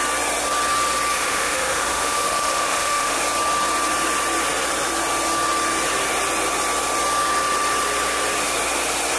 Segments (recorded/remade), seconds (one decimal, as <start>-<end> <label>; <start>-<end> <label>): 0.0-1.1 recorded; 1.1-3.2 remade; 3.2-9.2 recorded